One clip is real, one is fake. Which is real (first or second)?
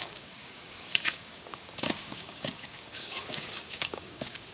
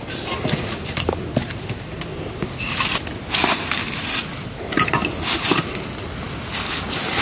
second